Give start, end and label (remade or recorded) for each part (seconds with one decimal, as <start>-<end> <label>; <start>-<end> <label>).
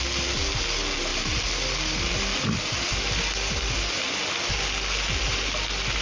0.0-6.0 recorded